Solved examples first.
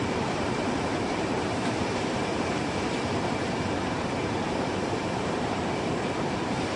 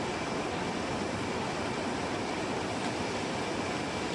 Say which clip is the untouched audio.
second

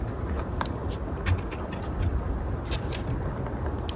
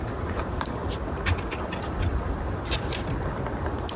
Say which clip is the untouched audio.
first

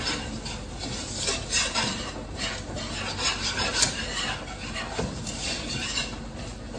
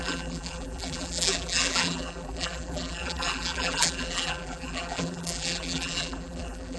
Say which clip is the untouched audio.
first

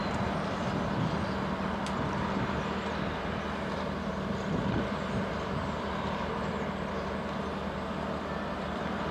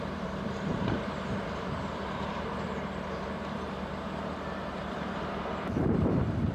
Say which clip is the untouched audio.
first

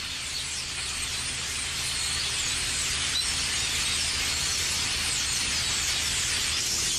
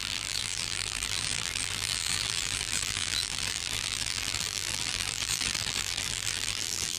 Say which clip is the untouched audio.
first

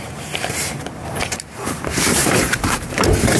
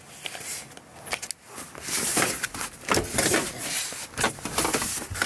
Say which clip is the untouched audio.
second